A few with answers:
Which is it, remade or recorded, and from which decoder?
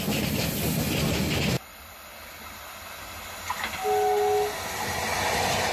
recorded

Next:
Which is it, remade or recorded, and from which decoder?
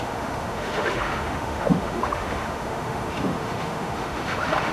remade, autoencoder, DAC-VAE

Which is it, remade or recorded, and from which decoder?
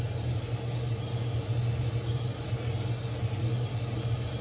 recorded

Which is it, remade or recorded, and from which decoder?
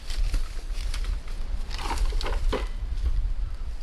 recorded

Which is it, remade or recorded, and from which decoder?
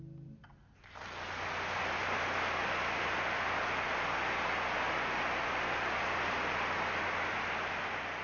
recorded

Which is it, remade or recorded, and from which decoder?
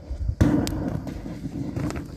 recorded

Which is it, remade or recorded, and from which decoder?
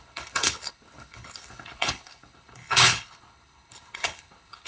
remade, codec, HILCodec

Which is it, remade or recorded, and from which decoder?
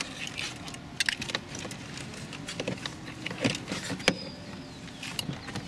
recorded